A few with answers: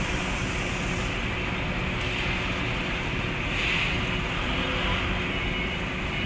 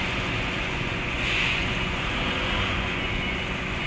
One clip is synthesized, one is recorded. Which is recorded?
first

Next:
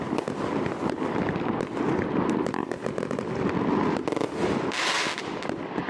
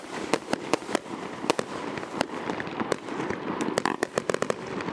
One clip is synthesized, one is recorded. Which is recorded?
first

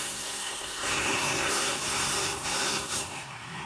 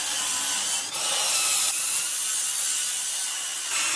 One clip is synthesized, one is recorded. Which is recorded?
second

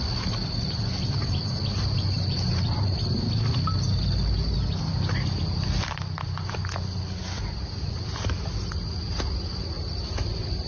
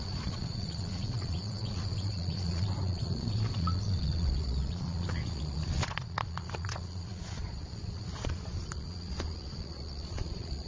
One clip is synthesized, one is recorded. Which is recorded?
first